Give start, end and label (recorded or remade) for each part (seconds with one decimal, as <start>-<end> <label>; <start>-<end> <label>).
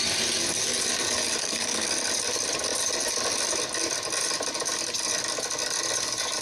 0.0-1.4 recorded; 1.4-1.9 remade; 1.9-6.4 recorded